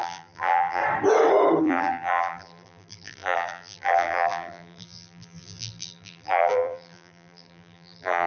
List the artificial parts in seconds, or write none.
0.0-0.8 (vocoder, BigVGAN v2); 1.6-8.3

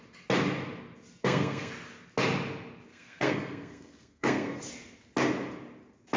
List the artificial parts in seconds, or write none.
1.2-1.7 (codec, SNAC); 2.9-4.6

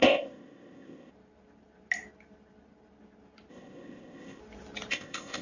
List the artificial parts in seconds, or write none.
0.0-1.1 (codec, ZipCodec); 3.5-4.4; 4.9-5.4

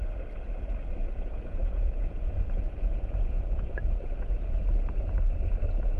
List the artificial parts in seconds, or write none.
1.0-4.6 (vocoder, Vocos)

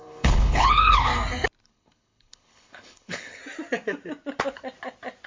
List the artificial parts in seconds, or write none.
0.0-1.1 (codec, HILCodec); 1.6-3.4

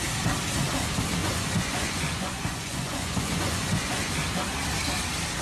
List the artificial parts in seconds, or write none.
1.2-4.1 (vocoder, Vocos)

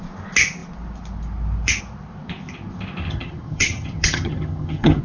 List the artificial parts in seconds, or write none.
3.0-5.0 (vocoder, HiFi-GAN)